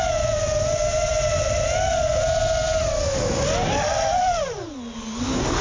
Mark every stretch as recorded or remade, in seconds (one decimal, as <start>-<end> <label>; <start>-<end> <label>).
0.0-5.6 recorded